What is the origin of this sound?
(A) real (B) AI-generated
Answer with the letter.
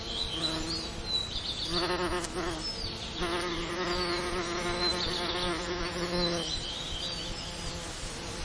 A